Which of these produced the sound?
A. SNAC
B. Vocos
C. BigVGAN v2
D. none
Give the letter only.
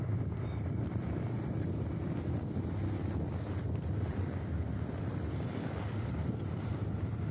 C